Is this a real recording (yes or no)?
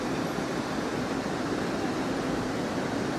yes